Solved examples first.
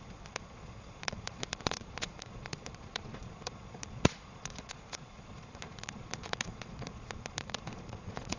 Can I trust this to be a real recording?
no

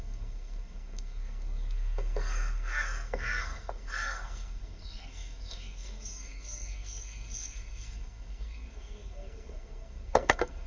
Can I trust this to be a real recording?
no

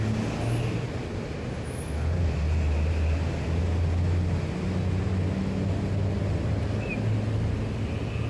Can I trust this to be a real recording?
yes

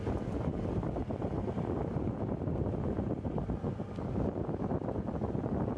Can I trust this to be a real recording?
yes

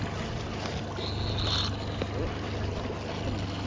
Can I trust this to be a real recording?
yes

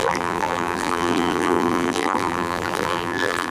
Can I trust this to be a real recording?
no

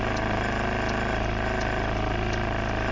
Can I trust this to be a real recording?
yes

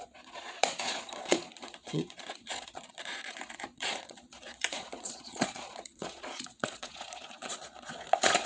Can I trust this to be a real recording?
no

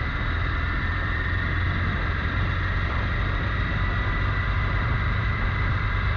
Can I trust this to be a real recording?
no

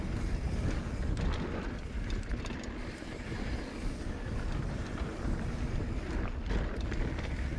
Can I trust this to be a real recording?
yes